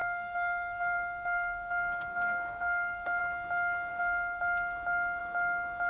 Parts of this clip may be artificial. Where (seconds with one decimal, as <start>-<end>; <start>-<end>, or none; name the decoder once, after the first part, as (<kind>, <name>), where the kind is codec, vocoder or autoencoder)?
0.0-3.2 (codec, SNAC); 3.9-4.4